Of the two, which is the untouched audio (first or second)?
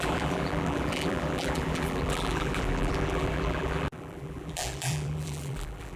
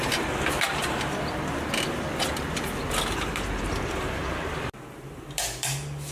second